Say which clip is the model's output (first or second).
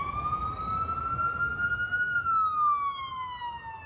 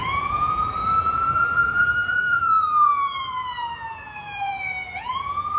second